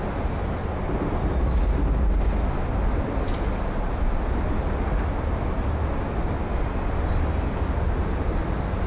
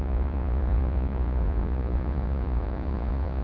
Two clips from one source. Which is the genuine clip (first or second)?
first